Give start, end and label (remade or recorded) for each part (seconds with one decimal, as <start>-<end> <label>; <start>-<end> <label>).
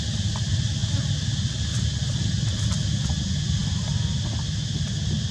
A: 0.0-5.3 recorded